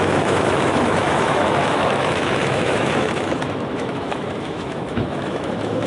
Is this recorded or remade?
remade